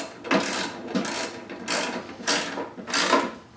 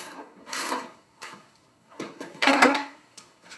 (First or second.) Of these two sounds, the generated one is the second